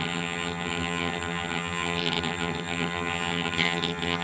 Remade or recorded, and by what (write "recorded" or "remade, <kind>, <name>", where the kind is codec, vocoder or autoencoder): remade, vocoder, HiFi-GAN